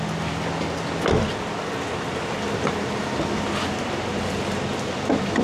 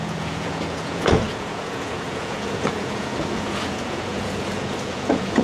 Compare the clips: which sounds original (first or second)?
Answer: first